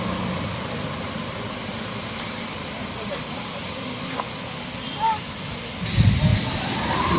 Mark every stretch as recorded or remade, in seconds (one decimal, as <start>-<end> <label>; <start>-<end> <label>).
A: 0.0-6.3 recorded; 6.3-7.2 remade